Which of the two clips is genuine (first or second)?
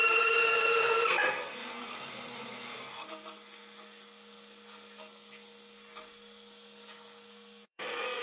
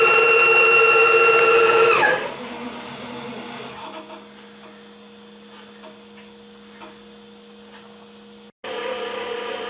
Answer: second